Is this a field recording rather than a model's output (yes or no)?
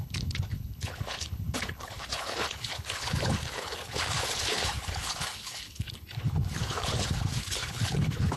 no